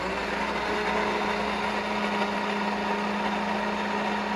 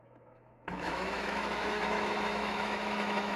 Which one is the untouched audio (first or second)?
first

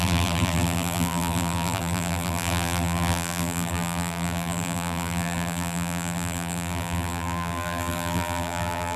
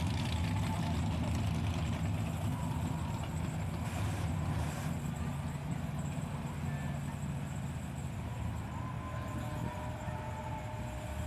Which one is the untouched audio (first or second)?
second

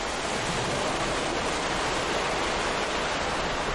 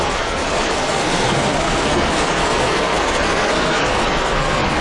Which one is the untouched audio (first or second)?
first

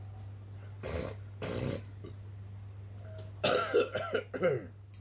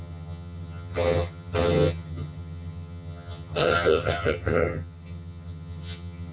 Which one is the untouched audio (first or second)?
first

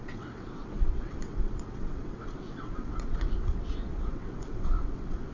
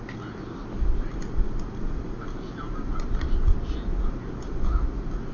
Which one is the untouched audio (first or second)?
second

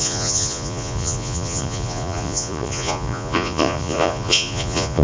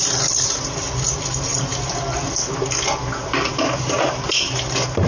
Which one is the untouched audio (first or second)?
second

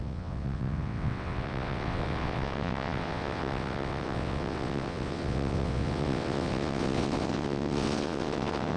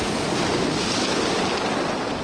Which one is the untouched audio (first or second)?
second